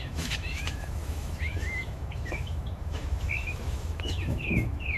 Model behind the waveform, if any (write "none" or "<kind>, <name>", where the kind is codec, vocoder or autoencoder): autoencoder, DAC-VAE